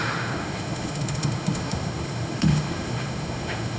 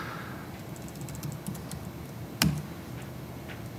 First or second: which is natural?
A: second